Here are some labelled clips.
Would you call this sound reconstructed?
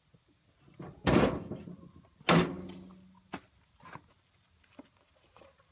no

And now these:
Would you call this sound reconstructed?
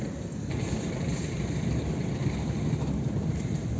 yes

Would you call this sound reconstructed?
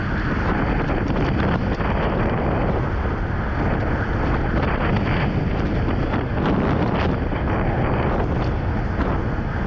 no